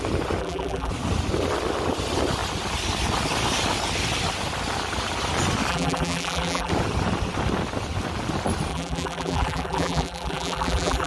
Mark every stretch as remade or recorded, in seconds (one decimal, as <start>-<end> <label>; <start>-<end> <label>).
0.0-0.4 recorded; 0.4-0.9 remade; 0.9-5.7 recorded; 5.7-6.7 remade; 6.7-8.7 recorded; 8.7-11.1 remade

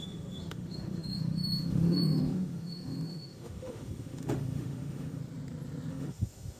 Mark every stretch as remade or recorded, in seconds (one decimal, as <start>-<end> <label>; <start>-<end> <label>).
0.0-5.2 remade; 5.2-5.9 recorded; 5.9-6.6 remade

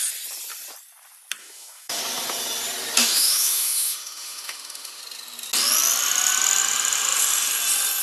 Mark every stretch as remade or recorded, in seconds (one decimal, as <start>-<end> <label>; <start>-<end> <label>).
0.0-1.4 recorded; 1.4-2.0 remade; 2.0-3.0 recorded; 3.0-5.0 remade; 5.0-8.0 recorded

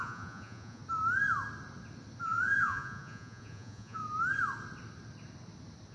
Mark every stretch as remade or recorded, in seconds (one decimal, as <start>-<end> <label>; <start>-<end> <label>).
0.0-0.8 remade; 0.8-2.2 recorded; 2.2-4.0 remade; 4.0-5.9 recorded

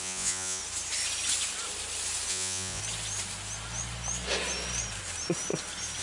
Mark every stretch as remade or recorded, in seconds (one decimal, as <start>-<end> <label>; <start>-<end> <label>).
0.0-0.6 remade; 0.6-2.3 recorded; 2.3-2.8 remade; 2.8-6.0 recorded

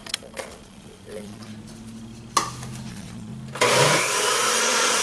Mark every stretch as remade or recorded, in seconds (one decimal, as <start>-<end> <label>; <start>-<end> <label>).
0.0-1.5 remade; 1.5-2.9 recorded; 2.9-3.3 remade; 3.3-4.6 recorded; 4.6-5.0 remade

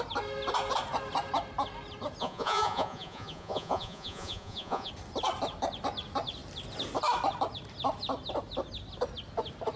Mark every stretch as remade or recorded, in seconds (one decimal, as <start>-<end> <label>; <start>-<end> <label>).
0.0-2.2 recorded; 2.2-4.9 remade; 4.9-9.8 recorded